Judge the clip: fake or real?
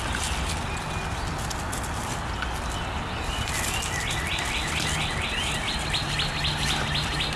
real